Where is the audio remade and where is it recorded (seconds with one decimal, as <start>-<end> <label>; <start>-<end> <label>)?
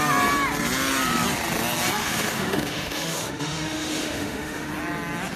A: 0.0-2.0 recorded; 2.0-4.7 remade; 4.7-5.4 recorded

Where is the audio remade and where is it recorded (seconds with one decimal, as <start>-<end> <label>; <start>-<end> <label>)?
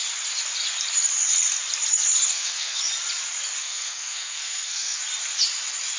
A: 0.0-2.3 recorded; 2.3-2.8 remade; 2.8-3.6 recorded; 3.6-5.0 remade; 5.0-6.0 recorded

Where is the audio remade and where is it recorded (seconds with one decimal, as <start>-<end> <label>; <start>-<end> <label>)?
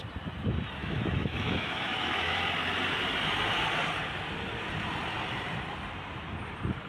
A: 0.0-0.8 recorded; 0.8-2.4 remade; 2.4-6.9 recorded